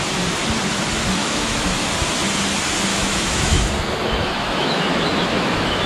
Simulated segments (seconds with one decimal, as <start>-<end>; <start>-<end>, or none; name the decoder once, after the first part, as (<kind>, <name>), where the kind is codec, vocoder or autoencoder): 1.2-1.9 (autoencoder, DAC-VAE); 2.9-3.7; 4.2-5.9